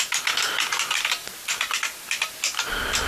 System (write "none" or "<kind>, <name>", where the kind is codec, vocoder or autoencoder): none